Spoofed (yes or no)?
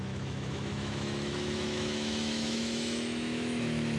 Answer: yes